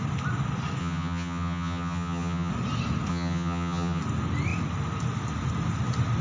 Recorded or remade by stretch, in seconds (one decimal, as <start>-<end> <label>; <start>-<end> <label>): 0.0-0.8 recorded; 0.8-2.5 remade; 2.5-3.1 recorded; 3.1-4.0 remade; 4.0-6.2 recorded